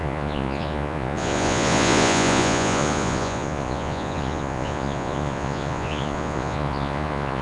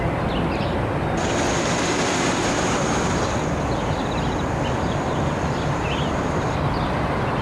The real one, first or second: second